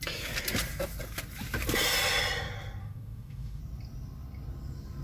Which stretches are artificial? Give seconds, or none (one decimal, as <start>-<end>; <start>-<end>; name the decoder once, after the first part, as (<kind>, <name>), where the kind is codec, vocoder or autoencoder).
2.8-3.6 (autoencoder, DAC-VAE)

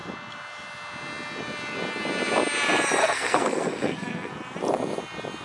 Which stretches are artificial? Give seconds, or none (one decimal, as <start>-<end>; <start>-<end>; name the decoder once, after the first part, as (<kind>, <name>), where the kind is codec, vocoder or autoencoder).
3.0-4.3 (codec, SNAC)